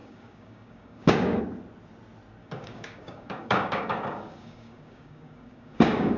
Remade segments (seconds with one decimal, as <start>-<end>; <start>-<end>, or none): 0.0-1.4; 2.4-6.2